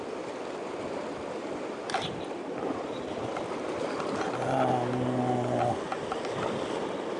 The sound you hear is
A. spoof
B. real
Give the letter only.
B